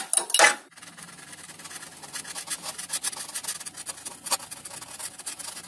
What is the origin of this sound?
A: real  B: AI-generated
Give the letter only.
A